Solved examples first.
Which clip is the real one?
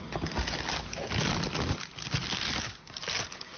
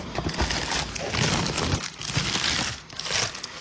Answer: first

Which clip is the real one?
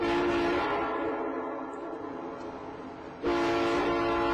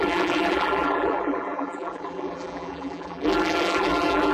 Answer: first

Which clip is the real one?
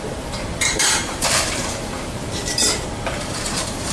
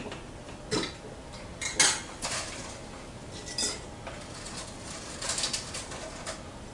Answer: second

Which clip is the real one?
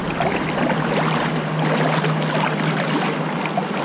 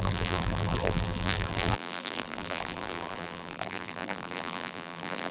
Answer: first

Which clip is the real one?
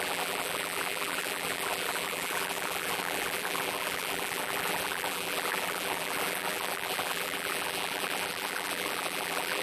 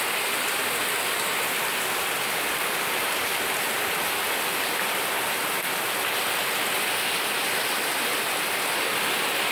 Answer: second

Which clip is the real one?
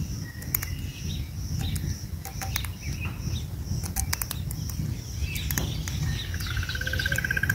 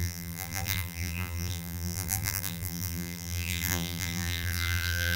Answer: first